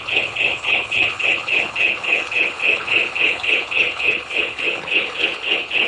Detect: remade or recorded remade